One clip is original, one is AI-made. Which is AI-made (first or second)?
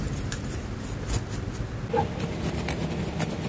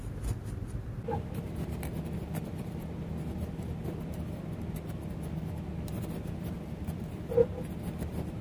second